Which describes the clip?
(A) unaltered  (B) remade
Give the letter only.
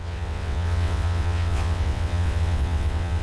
B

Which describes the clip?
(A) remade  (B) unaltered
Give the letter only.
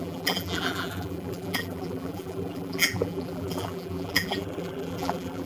A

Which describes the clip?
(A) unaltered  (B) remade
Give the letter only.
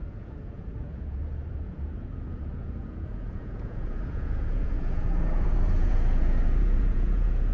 B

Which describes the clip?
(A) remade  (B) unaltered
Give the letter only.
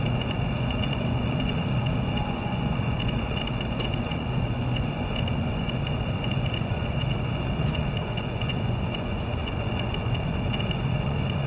A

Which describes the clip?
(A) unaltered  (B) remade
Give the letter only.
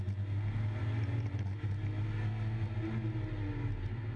A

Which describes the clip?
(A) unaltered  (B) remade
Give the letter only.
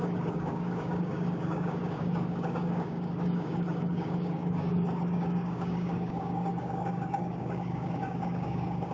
B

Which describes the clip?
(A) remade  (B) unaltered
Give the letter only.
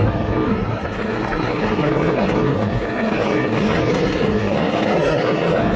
A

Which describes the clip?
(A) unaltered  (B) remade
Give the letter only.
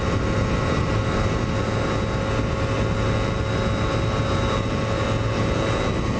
A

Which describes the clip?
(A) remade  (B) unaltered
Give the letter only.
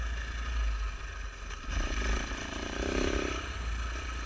B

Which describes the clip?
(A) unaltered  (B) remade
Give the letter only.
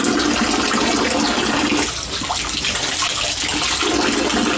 A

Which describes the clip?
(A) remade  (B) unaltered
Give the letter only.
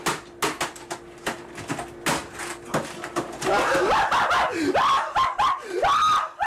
B